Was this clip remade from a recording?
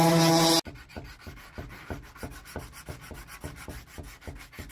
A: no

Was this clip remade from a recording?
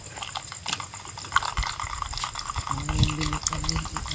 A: no